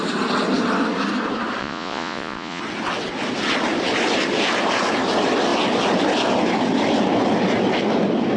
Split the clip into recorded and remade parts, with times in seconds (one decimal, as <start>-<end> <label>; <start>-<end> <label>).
0.0-1.6 recorded; 1.6-2.6 remade; 2.6-8.4 recorded